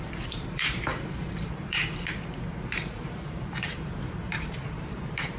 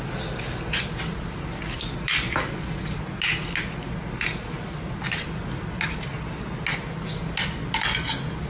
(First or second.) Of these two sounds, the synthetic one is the first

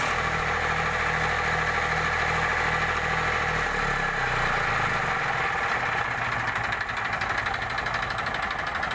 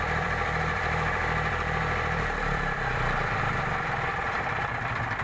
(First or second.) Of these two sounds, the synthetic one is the second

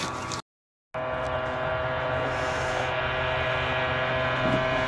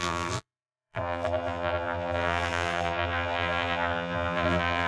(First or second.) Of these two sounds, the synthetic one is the second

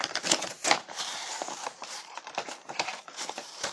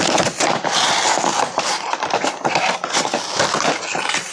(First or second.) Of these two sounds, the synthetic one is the first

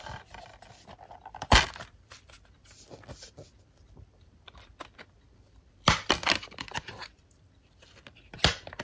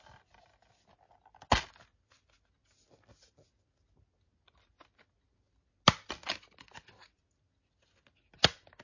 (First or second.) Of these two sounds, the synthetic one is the first